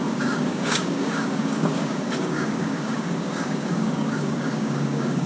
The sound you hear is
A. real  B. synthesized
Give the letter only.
B